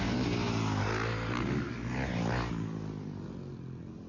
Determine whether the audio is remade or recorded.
recorded